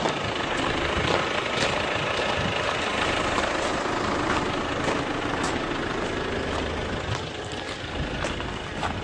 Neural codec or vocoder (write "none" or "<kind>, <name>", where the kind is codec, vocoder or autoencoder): vocoder, BigVGAN v2